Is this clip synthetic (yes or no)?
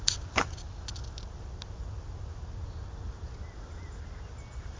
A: no